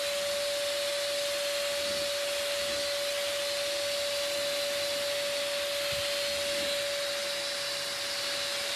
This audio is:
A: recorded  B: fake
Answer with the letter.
A